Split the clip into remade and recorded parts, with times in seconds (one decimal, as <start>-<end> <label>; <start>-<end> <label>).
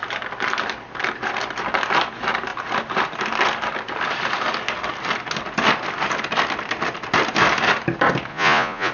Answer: 0.0-8.3 recorded; 8.3-8.9 remade